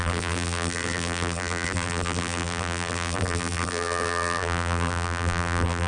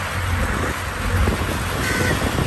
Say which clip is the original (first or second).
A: second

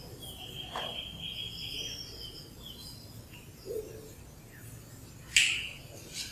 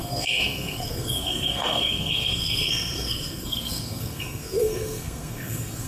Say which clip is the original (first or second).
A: first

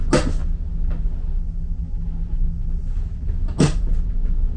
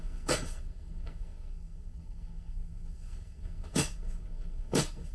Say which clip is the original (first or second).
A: first